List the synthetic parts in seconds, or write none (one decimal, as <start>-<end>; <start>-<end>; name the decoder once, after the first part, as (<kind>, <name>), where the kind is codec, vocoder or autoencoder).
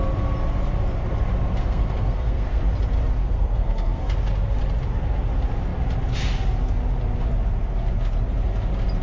1.6-2.6 (codec, SNAC); 3.2-4.1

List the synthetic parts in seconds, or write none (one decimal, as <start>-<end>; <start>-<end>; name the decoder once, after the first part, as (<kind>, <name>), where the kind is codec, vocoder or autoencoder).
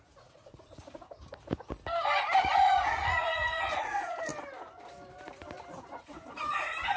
0.0-1.2 (vocoder, Vocos); 2.4-4.3; 5.9-7.0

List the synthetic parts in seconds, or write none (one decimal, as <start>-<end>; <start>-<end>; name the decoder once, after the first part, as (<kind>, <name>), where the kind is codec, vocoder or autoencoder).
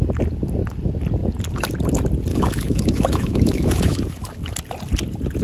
2.3-4.2 (autoencoder, DAC-VAE)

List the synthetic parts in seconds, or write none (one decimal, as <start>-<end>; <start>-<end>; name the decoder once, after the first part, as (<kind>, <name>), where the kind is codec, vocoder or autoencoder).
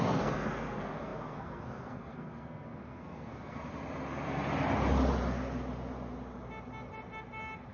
0.0-3.7 (codec, SNAC)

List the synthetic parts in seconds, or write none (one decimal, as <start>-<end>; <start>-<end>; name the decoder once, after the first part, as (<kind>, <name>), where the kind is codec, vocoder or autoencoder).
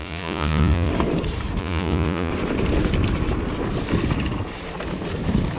0.0-0.9 (vocoder, Vocos); 1.6-2.3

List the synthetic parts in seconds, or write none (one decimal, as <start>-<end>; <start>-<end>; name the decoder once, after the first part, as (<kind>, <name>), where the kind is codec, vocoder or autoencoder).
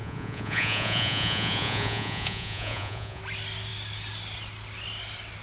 0.0-3.2 (vocoder, Vocos)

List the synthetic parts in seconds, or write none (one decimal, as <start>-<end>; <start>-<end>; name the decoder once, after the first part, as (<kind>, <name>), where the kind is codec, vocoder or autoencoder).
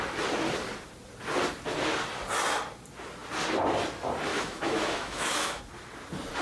4.3-5.6 (autoencoder, DAC-VAE)